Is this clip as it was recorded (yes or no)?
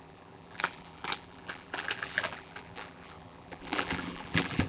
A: no